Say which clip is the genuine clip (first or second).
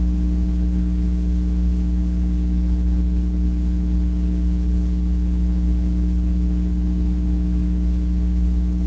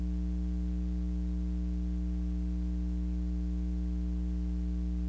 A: second